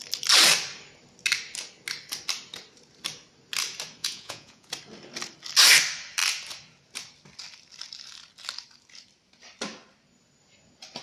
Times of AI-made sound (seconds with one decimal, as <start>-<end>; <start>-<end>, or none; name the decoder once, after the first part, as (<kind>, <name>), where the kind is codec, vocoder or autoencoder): 4.0-4.7 (vocoder, Vocos)